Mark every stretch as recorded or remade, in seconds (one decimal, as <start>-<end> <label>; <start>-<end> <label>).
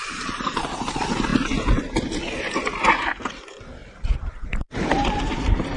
0.0-1.3 remade; 1.3-3.3 recorded; 3.3-5.8 remade